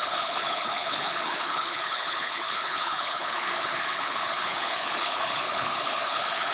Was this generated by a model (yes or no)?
yes